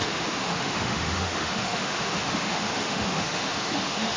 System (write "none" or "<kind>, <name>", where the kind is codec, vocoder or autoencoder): autoencoder, DAC-VAE